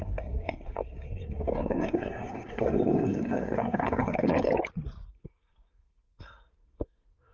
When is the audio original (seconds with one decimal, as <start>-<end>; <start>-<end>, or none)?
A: 4.5-5.1